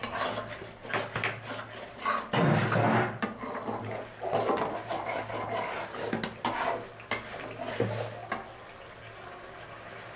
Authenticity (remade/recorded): recorded